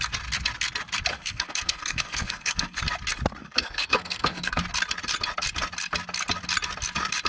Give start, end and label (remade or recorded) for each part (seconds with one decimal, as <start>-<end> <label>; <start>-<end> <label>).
0.0-1.1 recorded; 1.1-2.8 remade; 2.8-3.4 recorded; 3.4-4.6 remade; 4.6-7.3 recorded

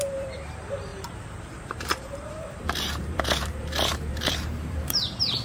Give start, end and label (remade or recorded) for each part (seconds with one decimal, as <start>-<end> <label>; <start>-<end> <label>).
0.0-5.4 remade